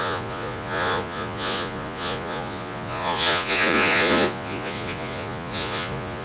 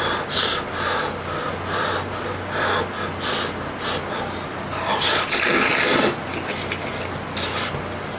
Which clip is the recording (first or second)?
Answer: second